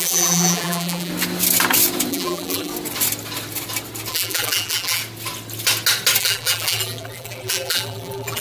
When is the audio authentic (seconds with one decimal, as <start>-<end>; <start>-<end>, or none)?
1.1-2.1; 2.7-4.1; 5.0-6.2